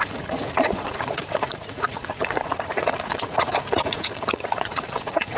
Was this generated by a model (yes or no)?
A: yes